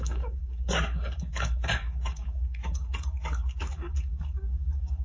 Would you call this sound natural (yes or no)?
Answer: no